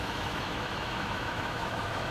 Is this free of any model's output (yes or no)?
no